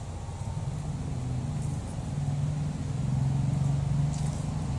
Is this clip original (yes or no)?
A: yes